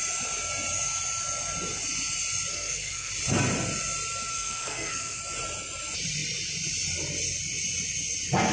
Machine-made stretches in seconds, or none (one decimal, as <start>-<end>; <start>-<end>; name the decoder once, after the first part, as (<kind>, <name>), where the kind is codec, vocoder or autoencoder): 2.5-3.1 (codec, SNAC); 4.3-5.2